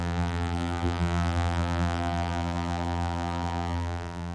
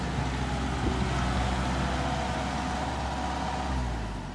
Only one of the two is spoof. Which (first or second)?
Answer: first